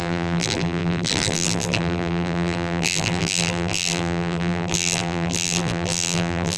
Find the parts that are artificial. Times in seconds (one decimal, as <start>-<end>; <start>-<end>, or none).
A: 0.0-6.6